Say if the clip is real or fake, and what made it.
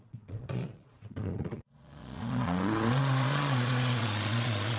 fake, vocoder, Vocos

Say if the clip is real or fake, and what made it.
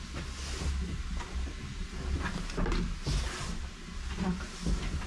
real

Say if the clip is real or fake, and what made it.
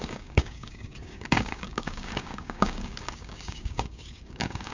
fake, codec, DAC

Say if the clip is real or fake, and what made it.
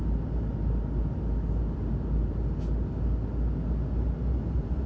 real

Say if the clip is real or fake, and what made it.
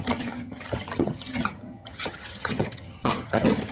fake, vocoder, HiFi-GAN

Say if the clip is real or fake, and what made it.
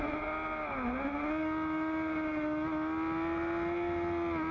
real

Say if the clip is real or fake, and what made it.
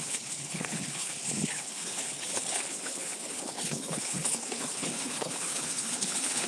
fake, codec, HILCodec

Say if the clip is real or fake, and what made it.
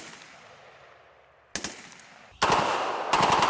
real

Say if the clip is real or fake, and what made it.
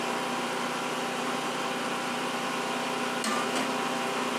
real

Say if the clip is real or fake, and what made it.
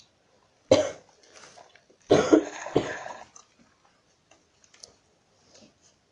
real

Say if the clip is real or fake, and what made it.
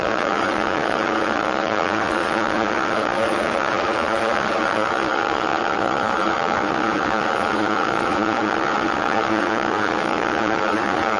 fake, vocoder, Vocos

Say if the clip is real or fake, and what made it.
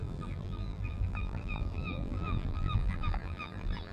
fake, vocoder, BigVGAN v2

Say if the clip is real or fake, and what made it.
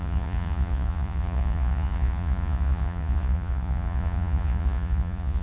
fake, vocoder, Vocos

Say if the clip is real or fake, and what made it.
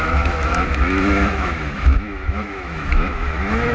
fake, autoencoder, DAC-VAE